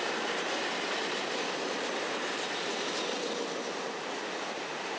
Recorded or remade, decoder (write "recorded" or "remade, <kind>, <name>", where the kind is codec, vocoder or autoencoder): recorded